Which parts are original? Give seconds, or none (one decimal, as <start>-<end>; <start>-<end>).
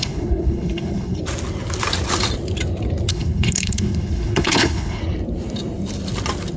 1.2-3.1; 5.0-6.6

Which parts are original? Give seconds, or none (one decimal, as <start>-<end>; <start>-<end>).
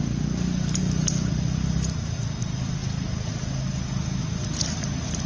0.0-5.3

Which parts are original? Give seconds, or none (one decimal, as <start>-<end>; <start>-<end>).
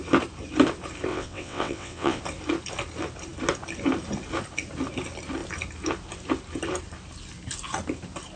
0.0-1.1; 2.2-8.4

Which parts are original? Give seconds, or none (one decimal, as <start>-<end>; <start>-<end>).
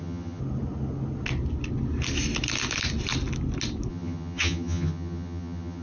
0.4-3.9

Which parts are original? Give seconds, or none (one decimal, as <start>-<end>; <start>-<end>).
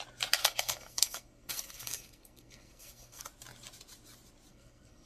0.0-0.4; 3.2-4.5